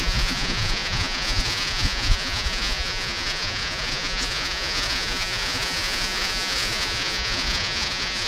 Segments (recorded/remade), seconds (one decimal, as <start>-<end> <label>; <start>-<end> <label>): 0.0-8.3 remade